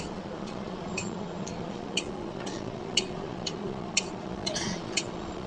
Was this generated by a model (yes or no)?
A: yes